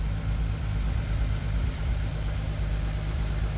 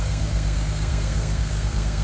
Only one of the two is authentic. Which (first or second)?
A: first